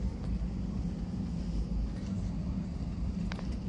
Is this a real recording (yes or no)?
yes